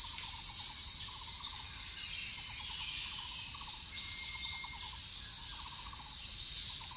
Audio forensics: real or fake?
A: real